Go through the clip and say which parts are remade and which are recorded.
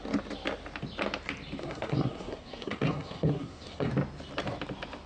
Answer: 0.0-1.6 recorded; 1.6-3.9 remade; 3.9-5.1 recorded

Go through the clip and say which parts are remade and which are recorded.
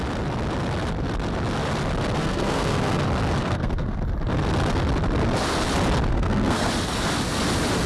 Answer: 0.0-2.2 recorded; 2.2-3.0 remade; 3.0-3.4 recorded; 3.4-4.0 remade; 4.0-6.1 recorded; 6.1-6.7 remade; 6.7-7.9 recorded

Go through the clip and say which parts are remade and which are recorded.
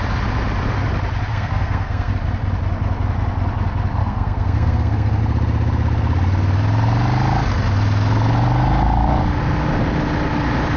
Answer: 0.0-1.3 recorded; 1.3-2.1 remade; 2.1-4.0 recorded; 4.0-5.2 remade; 5.2-10.8 recorded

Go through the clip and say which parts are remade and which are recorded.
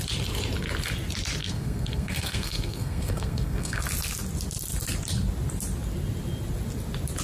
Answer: 0.0-1.4 recorded; 1.4-3.8 remade; 3.8-7.2 recorded